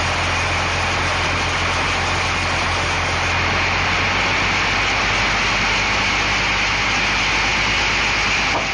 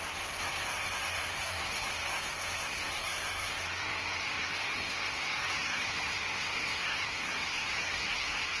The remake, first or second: second